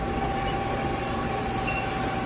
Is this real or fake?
real